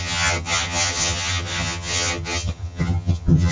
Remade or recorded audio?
remade